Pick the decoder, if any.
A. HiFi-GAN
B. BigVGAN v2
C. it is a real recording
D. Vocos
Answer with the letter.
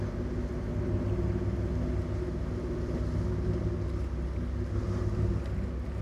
C